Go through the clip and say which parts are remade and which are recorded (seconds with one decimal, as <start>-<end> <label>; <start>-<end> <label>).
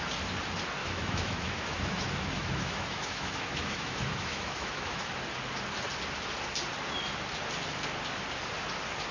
0.0-0.8 recorded; 0.8-5.1 remade; 5.1-9.1 recorded